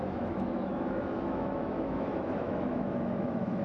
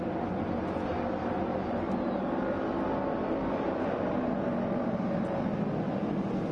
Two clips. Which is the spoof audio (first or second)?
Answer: first